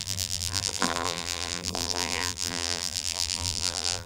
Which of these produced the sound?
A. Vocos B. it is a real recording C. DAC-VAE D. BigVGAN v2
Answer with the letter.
D